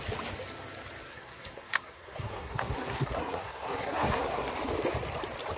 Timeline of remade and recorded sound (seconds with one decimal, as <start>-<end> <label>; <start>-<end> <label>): 0.0-1.1 recorded; 1.1-4.5 remade; 4.5-5.6 recorded